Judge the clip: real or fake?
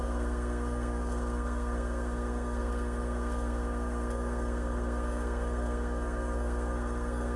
fake